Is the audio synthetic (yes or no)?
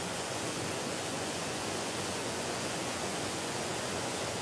yes